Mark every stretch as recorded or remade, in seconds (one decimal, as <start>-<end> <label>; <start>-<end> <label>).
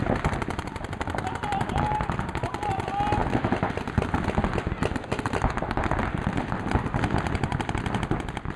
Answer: 0.0-8.6 recorded